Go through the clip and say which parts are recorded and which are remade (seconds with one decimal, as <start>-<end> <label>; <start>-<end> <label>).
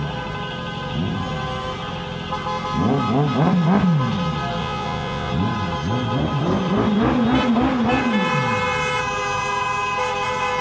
0.0-4.6 recorded; 4.6-5.3 remade; 5.3-10.6 recorded